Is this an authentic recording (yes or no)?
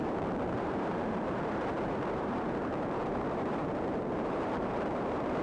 no